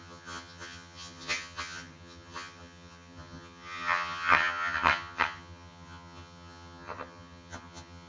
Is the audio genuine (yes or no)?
no